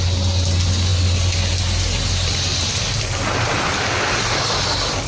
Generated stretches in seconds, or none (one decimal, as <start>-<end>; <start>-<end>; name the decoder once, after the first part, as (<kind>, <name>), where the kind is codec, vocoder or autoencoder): none